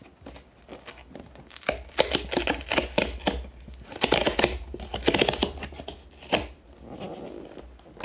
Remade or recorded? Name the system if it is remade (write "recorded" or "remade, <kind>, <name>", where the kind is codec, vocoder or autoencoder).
recorded